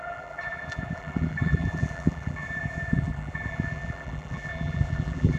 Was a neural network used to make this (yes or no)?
yes